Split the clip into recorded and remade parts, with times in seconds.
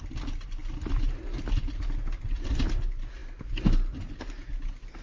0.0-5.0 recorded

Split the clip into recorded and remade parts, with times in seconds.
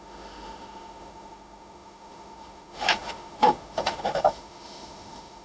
0.0-5.4 remade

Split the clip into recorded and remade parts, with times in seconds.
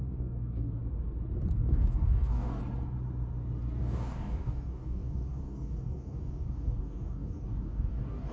0.0-0.8 remade; 0.8-1.5 recorded; 1.5-2.6 remade; 2.6-3.8 recorded; 3.8-8.3 remade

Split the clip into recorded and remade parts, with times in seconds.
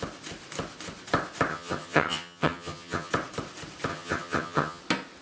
0.0-1.5 recorded; 1.5-3.1 remade; 3.1-3.9 recorded; 3.9-4.8 remade; 4.8-5.2 recorded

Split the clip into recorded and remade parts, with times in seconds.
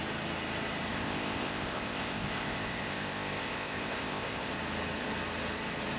0.0-0.9 recorded; 0.9-4.5 remade; 4.5-6.0 recorded